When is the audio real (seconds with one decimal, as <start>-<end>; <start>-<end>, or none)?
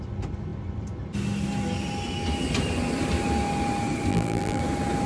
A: 0.0-4.1; 4.6-5.1